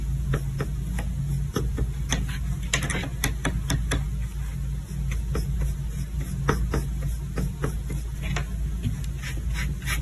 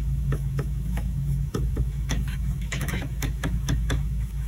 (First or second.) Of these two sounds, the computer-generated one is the second